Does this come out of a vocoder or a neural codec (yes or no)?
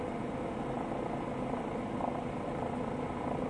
no